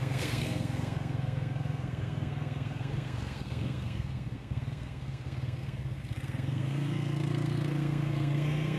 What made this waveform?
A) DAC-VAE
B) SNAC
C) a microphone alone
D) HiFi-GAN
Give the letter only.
B